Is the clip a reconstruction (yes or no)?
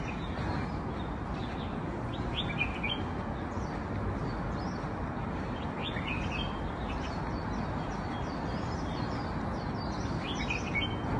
no